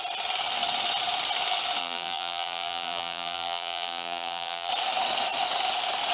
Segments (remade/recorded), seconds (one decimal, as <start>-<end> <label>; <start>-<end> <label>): 0.0-1.8 recorded; 1.8-4.7 remade; 4.7-6.1 recorded